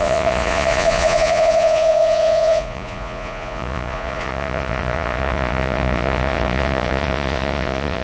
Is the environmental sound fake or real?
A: fake